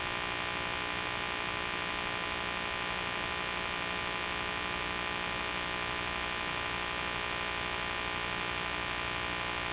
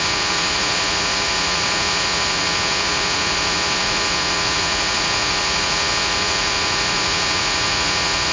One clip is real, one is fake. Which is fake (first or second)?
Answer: second